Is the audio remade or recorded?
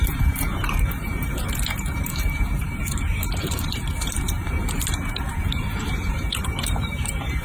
remade